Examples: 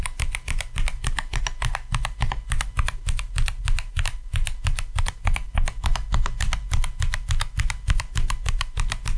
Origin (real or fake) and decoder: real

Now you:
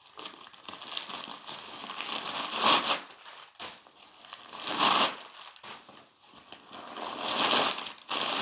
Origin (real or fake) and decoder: real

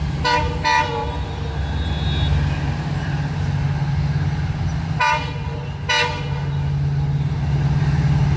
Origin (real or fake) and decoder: real